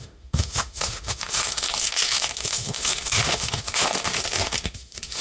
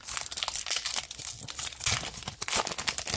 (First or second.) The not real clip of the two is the first